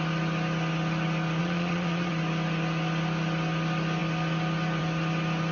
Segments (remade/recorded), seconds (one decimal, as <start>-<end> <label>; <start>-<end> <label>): 0.0-1.4 recorded; 1.4-2.1 remade; 2.1-5.5 recorded